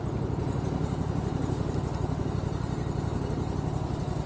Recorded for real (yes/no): yes